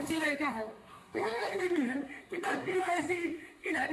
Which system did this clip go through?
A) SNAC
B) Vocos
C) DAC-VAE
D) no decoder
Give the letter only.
A